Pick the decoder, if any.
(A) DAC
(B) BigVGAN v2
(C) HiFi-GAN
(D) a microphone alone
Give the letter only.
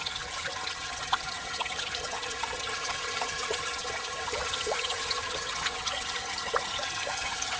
C